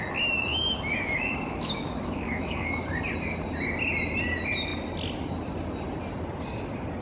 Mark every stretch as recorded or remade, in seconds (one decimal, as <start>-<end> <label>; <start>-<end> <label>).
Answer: 0.0-0.5 recorded; 0.5-2.8 remade; 2.8-7.0 recorded